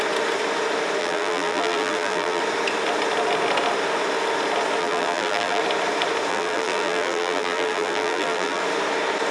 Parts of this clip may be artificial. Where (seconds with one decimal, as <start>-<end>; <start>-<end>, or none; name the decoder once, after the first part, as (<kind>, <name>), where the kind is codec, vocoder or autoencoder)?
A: 1.0-2.4 (vocoder, BigVGAN v2); 4.8-5.6; 6.3-8.6